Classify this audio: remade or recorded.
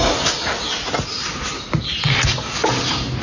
recorded